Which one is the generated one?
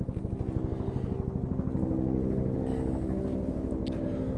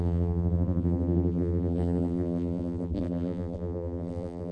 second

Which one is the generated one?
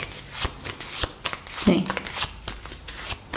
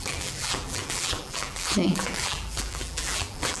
second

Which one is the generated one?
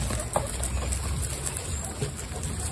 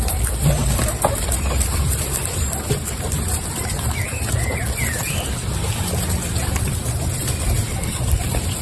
second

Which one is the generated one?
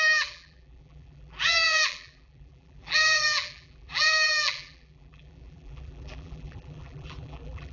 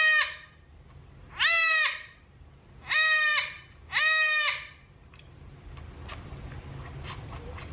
first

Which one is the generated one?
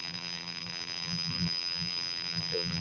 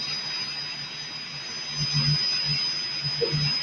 first